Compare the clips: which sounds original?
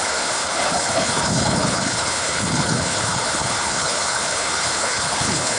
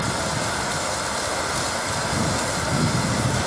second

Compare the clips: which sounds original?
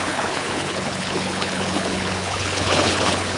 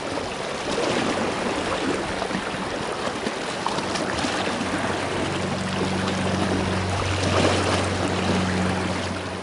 second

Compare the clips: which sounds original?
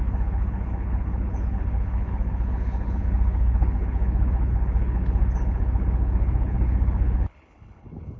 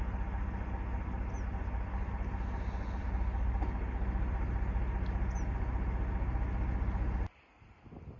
second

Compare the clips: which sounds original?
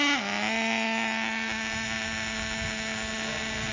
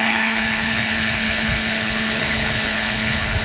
first